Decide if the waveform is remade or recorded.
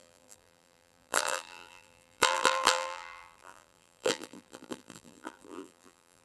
remade